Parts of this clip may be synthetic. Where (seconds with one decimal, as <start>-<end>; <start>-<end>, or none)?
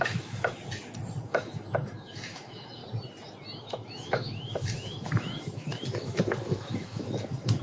0.0-0.6; 1.2-2.8; 3.6-7.6